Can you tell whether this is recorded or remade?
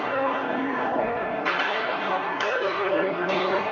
remade